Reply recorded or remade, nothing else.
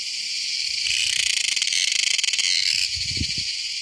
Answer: recorded